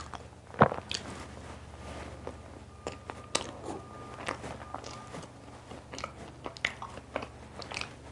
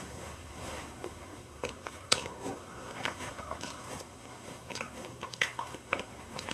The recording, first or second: first